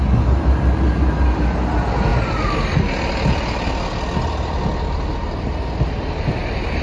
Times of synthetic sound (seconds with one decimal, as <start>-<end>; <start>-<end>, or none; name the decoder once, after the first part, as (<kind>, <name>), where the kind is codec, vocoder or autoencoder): none